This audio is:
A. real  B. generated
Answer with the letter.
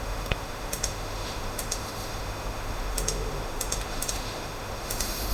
B